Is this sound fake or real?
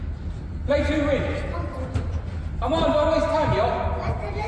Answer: real